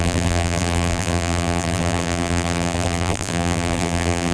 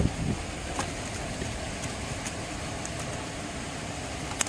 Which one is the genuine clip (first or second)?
second